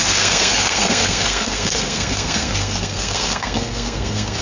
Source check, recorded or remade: remade